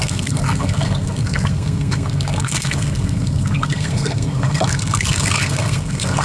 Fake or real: fake